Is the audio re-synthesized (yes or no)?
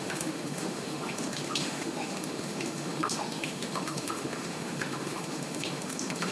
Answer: yes